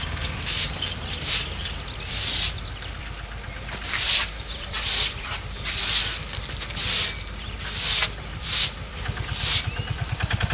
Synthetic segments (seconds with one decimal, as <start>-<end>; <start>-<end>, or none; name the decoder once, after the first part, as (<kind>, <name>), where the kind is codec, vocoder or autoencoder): 0.0-6.3 (vocoder, BigVGAN v2); 8.4-10.5